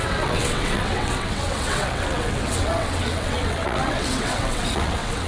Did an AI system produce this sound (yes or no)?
yes